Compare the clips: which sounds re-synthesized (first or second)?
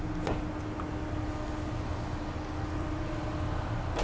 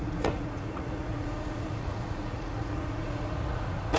second